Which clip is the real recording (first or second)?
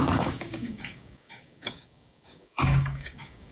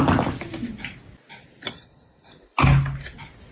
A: second